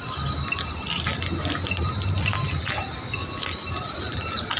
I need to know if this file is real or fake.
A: real